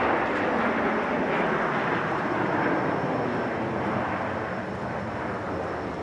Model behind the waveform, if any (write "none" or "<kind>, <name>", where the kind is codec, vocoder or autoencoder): none